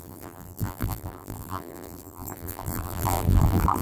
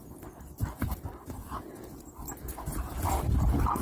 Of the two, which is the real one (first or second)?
second